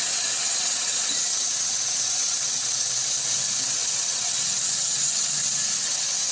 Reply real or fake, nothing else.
fake